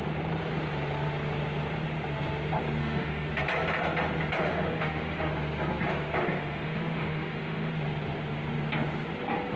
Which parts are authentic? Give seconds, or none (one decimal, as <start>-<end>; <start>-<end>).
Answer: 0.0-2.8; 3.3-4.4; 5.3-6.2; 7.7-9.6